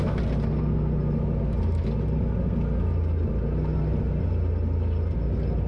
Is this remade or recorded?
recorded